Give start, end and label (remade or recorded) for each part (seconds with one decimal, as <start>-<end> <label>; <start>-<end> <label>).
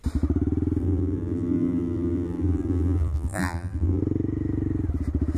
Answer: 0.0-0.8 recorded; 0.8-4.0 remade; 4.0-5.4 recorded